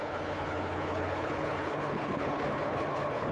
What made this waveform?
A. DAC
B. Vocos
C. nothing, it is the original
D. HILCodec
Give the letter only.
D